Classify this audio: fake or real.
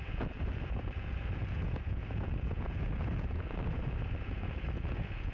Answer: fake